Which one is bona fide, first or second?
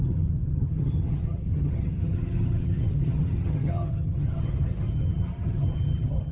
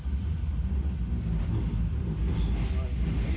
second